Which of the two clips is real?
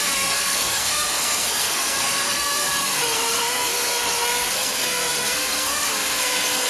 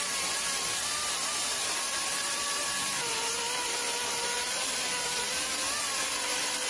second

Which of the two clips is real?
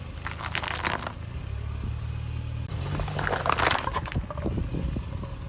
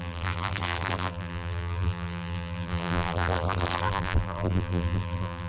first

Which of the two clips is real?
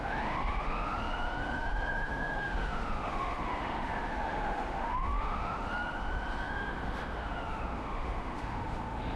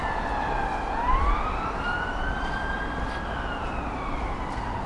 second